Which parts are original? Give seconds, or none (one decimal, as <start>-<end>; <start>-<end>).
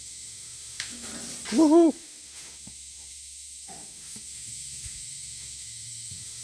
1.1-1.9